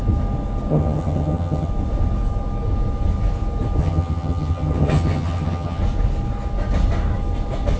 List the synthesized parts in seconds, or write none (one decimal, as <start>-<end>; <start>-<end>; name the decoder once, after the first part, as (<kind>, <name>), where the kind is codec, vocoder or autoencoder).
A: 0.7-1.7 (vocoder, HiFi-GAN); 3.8-5.8